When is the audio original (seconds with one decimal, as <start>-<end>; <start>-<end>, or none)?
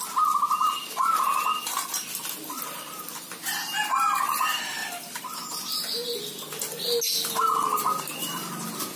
0.0-9.0